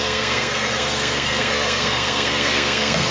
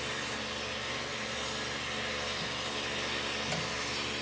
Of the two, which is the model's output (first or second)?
first